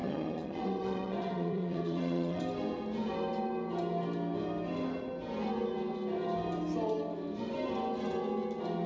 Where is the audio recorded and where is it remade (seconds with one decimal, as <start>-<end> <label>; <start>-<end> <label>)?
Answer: 0.0-2.4 remade; 2.4-8.9 recorded

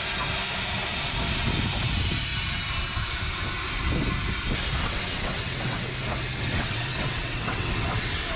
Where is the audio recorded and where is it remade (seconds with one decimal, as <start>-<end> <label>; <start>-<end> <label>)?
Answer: 0.0-4.8 recorded; 4.8-5.9 remade; 5.9-6.5 recorded; 6.5-8.4 remade

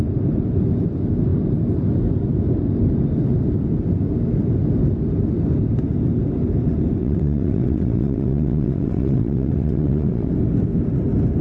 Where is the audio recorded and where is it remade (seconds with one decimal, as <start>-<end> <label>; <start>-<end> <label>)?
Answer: 0.0-7.0 recorded; 7.0-10.3 remade; 10.3-11.4 recorded

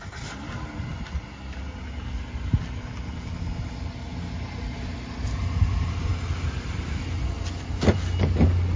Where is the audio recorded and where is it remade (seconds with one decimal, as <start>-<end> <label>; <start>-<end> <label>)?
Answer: 0.0-8.8 recorded

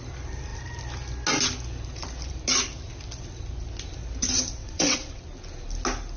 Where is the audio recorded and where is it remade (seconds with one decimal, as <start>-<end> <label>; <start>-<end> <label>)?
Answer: 0.0-4.6 recorded; 4.6-5.2 remade; 5.2-6.2 recorded

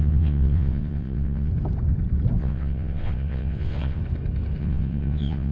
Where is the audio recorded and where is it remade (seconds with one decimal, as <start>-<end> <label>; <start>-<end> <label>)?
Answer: 0.0-1.5 remade; 1.5-2.4 recorded; 2.4-4.0 remade; 4.0-4.6 recorded; 4.6-5.5 remade